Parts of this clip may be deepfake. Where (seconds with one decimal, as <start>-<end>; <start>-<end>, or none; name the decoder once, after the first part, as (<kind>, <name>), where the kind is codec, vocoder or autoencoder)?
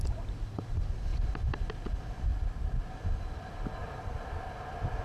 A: 2.3-2.9 (vocoder, BigVGAN v2); 3.8-5.0